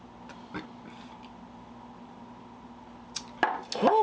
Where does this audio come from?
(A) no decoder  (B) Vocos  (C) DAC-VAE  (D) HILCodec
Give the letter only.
A